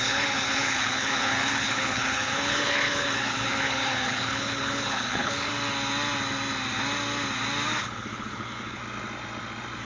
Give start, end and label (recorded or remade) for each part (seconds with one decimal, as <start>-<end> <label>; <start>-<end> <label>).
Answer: 0.0-5.5 remade; 5.5-7.8 recorded; 7.8-8.8 remade; 8.8-9.8 recorded